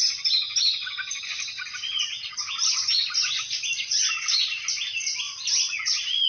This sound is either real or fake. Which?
real